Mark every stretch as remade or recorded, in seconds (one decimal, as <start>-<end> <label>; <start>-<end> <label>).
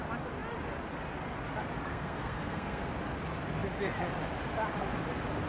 0.0-1.9 recorded; 1.9-2.9 remade; 2.9-5.5 recorded